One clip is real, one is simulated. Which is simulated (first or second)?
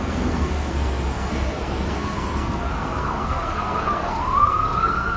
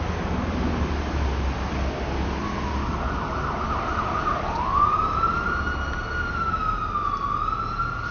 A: first